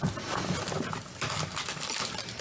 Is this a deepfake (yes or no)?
no